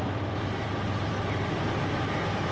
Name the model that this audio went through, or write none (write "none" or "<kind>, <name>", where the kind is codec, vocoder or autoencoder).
none